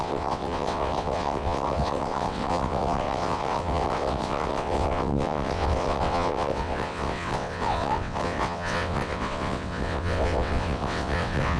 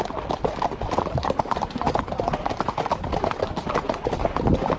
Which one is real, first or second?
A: second